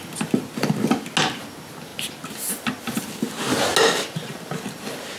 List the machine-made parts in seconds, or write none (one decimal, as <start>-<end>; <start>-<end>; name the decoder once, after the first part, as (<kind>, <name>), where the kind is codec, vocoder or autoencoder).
none